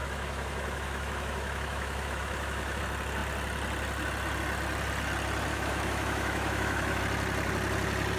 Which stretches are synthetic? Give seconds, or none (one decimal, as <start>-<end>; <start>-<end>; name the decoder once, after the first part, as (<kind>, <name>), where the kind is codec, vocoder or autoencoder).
0.0-2.8 (autoencoder, DAC-VAE); 5.5-7.0